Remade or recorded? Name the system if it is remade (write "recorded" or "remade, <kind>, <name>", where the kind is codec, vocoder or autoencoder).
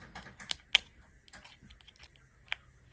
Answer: recorded